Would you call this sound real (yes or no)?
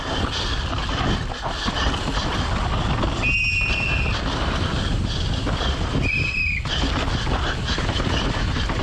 yes